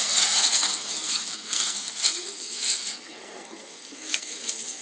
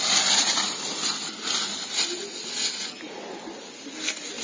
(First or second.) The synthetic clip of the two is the first